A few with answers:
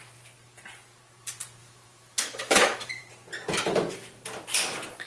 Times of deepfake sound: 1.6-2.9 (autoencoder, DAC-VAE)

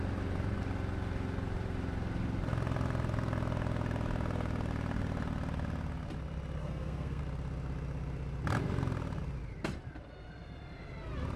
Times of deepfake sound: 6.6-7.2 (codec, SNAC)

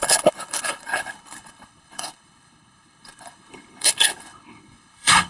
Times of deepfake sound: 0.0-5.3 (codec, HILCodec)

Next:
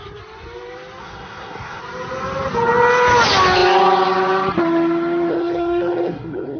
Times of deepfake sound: 1.0-1.8 (codec, SNAC); 5.3-6.6

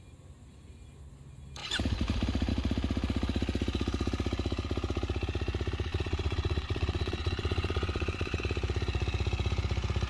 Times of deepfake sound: 5.9-8.4 (vocoder, WaveNeXt)

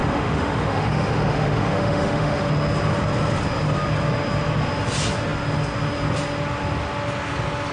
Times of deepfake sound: 0.0-2.5 (autoencoder, DAC-VAE)

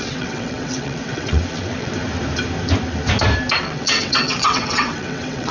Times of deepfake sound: 0.0-1.9 (vocoder, WaveNeXt); 3.6-5.5